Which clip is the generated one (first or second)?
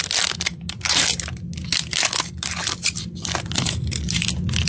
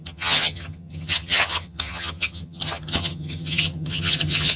second